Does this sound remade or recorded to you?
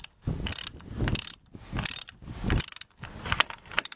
recorded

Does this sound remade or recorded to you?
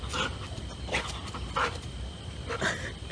recorded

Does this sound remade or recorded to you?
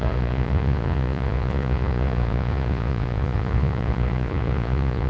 remade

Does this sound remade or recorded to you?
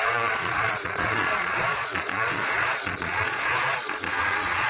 remade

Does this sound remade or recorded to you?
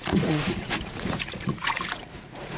remade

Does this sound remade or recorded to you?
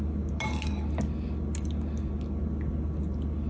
recorded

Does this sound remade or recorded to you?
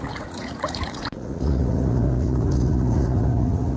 remade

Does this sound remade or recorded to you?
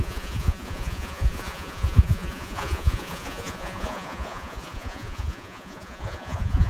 remade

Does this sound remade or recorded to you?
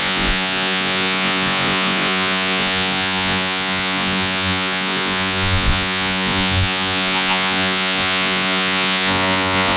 remade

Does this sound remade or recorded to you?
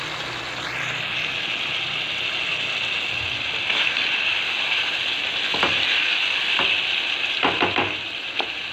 recorded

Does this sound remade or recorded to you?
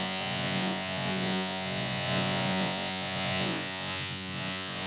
remade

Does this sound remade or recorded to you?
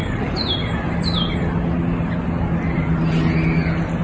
recorded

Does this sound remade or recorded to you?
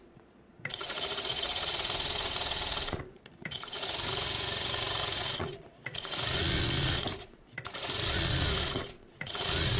remade